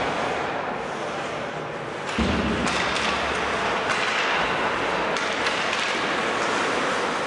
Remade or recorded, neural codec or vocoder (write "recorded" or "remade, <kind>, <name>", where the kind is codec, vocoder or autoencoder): recorded